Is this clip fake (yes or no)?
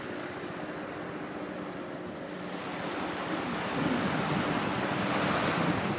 no